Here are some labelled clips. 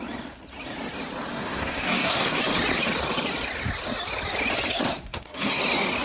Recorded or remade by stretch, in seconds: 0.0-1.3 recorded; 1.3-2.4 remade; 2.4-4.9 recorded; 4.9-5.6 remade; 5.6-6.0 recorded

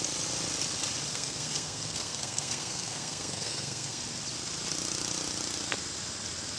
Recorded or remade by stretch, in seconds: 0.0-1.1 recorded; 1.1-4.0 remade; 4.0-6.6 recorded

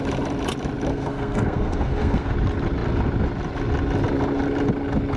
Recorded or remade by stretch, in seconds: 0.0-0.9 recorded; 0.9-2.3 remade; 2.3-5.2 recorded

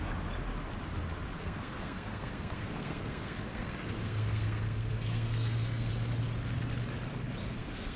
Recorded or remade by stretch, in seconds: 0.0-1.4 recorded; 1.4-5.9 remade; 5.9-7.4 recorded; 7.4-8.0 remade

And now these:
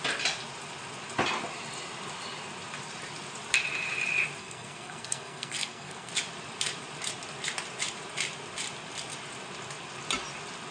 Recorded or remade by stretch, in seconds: 0.0-4.4 recorded; 4.4-6.1 remade; 6.1-10.7 recorded

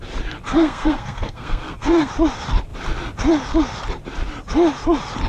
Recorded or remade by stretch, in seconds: 0.0-0.5 recorded; 0.5-2.1 remade; 2.1-5.3 recorded